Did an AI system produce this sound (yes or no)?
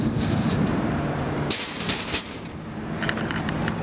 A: yes